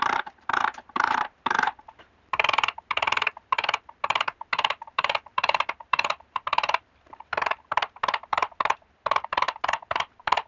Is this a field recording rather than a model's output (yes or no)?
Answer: no